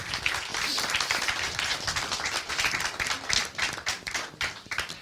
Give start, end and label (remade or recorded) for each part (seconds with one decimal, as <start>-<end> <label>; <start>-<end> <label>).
0.0-0.5 recorded; 0.5-2.5 remade; 2.5-5.0 recorded